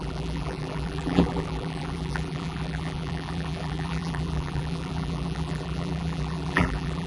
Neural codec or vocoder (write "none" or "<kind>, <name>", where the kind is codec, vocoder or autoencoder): vocoder, BigVGAN v2